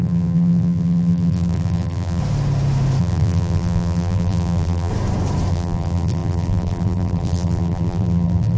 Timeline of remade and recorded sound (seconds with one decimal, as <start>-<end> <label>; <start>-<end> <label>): 0.0-2.2 remade; 2.2-3.0 recorded; 3.0-4.9 remade; 4.9-5.5 recorded; 5.5-8.6 remade